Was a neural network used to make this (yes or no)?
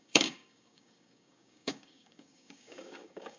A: yes